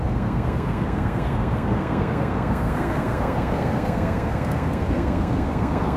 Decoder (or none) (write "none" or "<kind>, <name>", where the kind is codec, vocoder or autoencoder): codec, SNAC